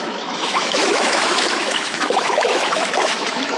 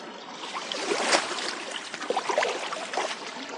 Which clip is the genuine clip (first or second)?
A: second